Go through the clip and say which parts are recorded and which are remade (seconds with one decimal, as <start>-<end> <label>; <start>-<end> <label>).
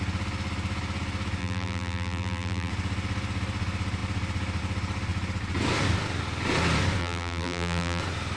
0.0-1.4 recorded; 1.4-2.7 remade; 2.7-7.0 recorded; 7.0-8.0 remade; 8.0-8.4 recorded